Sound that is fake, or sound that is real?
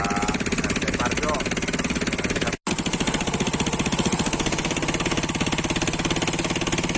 real